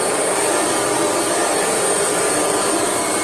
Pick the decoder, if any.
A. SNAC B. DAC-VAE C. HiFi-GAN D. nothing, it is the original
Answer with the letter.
D